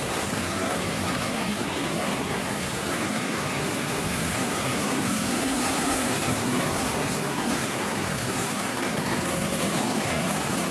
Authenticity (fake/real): fake